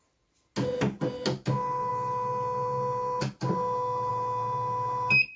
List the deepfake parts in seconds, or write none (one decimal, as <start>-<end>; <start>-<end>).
none